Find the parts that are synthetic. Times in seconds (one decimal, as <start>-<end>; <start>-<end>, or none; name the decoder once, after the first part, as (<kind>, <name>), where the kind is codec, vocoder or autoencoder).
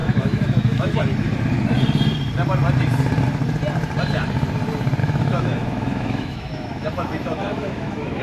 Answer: 0.0-1.0 (autoencoder, DAC-VAE); 5.0-8.2